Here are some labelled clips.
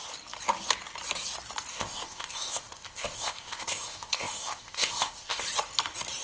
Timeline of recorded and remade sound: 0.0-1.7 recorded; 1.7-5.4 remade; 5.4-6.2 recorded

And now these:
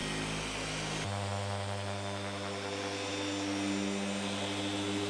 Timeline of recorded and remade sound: 0.0-5.1 recorded

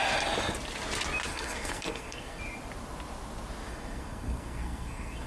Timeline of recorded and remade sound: 0.0-1.3 recorded; 1.3-2.4 remade; 2.4-3.7 recorded; 3.7-5.3 remade

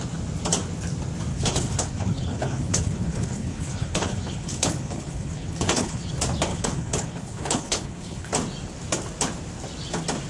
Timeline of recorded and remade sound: 0.0-1.3 recorded; 1.3-6.1 remade; 6.1-6.5 recorded; 6.5-8.3 remade; 8.3-10.3 recorded